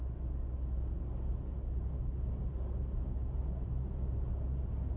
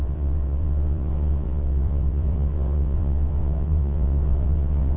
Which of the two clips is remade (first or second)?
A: second